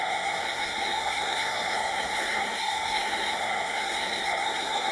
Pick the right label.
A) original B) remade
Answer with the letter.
B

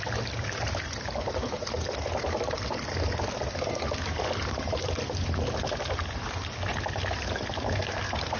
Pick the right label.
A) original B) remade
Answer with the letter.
A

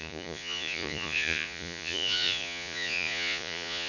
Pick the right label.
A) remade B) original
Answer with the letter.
A